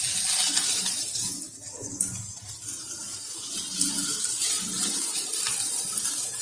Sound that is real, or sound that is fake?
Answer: real